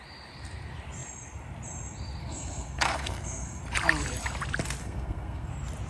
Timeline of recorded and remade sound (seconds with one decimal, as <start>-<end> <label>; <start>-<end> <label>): 0.0-2.2 recorded; 2.2-3.6 remade; 3.6-4.8 recorded; 4.8-5.5 remade; 5.5-5.9 recorded